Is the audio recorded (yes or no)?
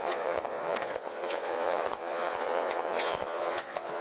no